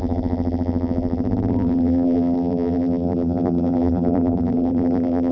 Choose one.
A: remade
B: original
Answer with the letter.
A